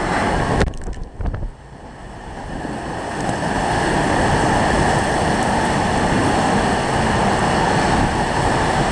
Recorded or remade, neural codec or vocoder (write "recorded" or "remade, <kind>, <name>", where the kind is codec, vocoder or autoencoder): recorded